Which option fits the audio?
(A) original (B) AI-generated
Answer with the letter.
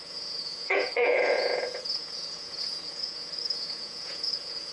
B